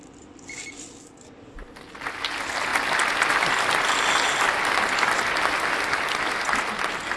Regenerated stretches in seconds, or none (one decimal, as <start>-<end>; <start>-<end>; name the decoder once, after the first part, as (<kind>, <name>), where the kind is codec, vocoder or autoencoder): none